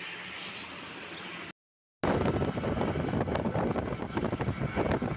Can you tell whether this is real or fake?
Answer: real